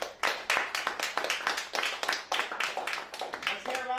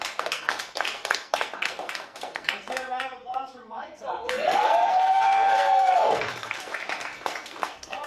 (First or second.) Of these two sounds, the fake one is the second